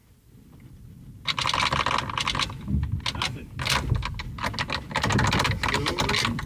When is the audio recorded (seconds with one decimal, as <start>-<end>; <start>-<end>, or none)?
0.0-6.5